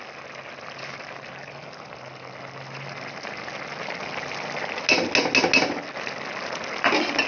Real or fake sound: real